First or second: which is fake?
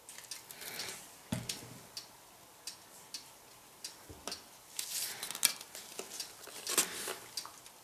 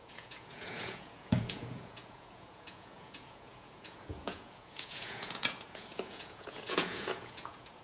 second